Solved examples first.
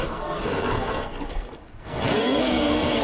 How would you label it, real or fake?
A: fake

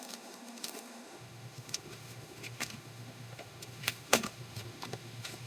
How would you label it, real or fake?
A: fake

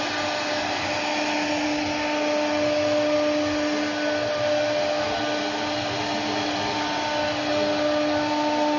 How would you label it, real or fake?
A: real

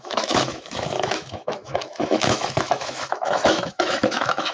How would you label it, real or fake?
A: fake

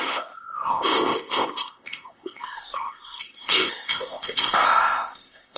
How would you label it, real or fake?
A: fake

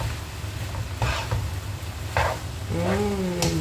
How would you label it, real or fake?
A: real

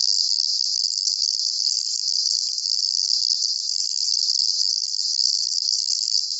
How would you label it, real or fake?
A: fake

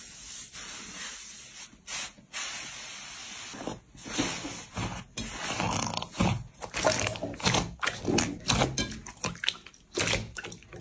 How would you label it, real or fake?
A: real